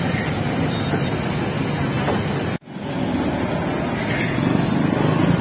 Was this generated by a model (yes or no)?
no